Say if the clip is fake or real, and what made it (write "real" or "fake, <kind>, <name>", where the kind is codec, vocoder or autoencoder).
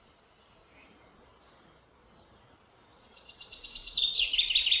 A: real